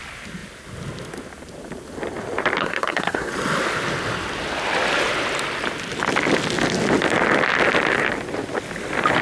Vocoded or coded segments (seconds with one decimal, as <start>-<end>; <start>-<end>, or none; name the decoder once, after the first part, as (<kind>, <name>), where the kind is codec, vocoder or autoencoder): 2.6-3.3 (codec, SNAC)